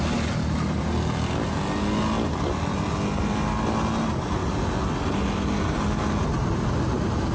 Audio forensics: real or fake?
real